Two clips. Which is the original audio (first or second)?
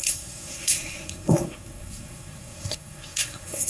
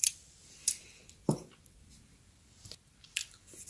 second